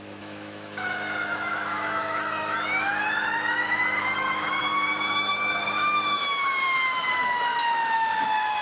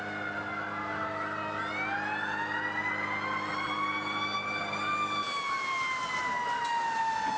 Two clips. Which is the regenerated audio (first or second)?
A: first